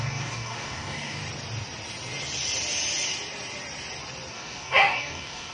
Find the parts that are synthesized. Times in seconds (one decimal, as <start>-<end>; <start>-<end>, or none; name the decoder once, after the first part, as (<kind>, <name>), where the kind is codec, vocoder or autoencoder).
0.0-1.2 (codec, DAC); 4.3-5.5